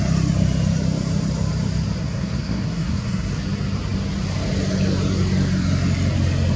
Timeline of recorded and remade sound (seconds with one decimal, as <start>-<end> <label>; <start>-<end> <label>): 0.0-2.0 recorded; 2.0-3.3 remade; 3.3-6.6 recorded